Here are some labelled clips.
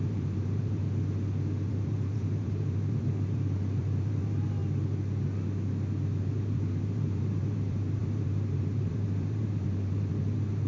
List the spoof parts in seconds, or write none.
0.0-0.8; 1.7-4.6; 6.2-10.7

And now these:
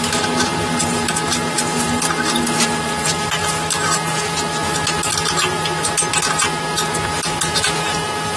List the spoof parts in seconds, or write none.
none

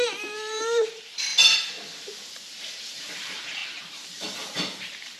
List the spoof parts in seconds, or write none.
0.0-1.3; 2.6-5.2

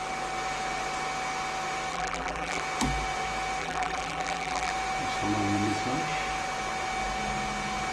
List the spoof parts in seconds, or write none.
1.9-2.6; 3.6-4.7

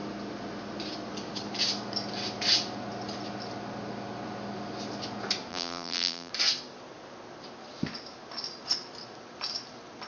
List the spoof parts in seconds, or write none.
5.5-6.3

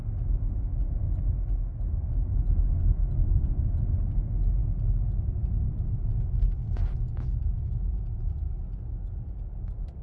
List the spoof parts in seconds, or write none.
none

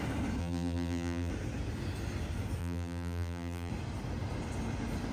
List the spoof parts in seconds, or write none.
0.4-1.3; 2.6-3.7

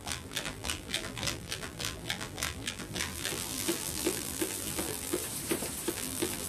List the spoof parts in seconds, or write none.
0.0-5.2; 5.9-6.5